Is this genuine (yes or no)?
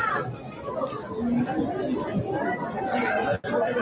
yes